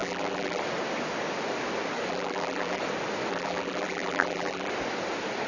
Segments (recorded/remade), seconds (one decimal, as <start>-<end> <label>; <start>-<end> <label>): 0.0-0.6 remade; 0.6-2.1 recorded; 2.1-2.8 remade; 2.8-3.3 recorded; 3.3-4.7 remade; 4.7-5.5 recorded